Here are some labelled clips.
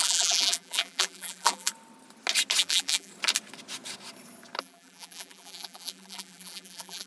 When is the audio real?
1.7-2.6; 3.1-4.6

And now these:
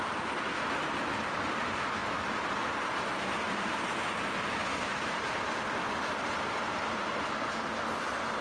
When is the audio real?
0.0-4.9; 5.5-8.4

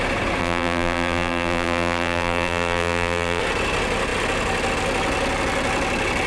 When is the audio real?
0.0-0.4; 3.4-6.3

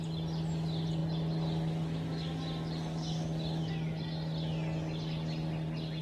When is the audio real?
0.0-6.0